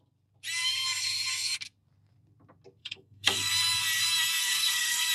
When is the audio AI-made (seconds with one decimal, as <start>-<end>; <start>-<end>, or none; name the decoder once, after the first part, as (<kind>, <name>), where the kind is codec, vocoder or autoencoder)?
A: 2.8-3.5 (codec, SNAC); 4.4-5.1